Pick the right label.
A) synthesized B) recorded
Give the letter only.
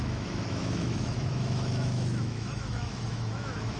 A